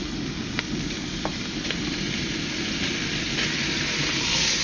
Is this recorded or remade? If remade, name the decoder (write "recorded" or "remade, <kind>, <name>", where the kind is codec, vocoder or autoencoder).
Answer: recorded